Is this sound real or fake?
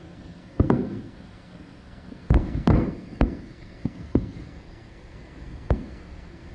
fake